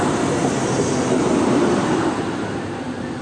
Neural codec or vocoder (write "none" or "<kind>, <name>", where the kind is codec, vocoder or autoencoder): none